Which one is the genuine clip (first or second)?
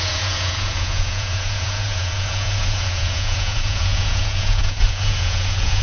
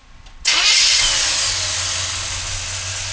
second